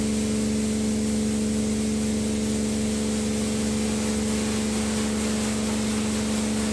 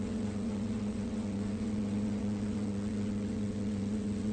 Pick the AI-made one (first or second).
second